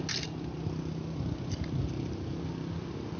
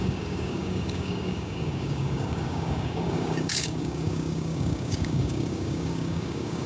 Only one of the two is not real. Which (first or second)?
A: second